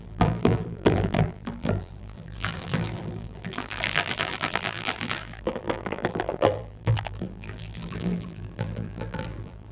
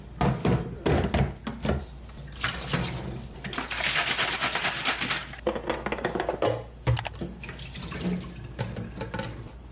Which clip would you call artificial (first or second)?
first